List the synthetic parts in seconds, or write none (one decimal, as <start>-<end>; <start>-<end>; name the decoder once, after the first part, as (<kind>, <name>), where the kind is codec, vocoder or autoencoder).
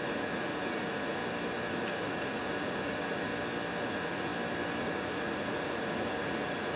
0.0-1.2 (vocoder, Vocos); 1.7-3.3; 3.8-4.3; 4.8-6.8